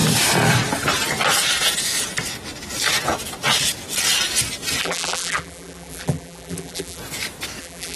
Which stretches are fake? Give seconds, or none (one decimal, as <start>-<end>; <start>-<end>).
4.8-7.0; 7.6-8.0